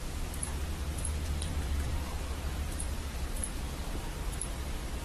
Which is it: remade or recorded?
remade